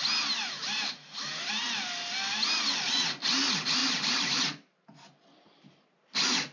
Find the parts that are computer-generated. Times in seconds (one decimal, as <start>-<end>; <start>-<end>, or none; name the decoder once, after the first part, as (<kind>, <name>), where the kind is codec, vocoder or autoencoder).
0.4-1.5 (vocoder, BigVGAN v2); 3.8-4.4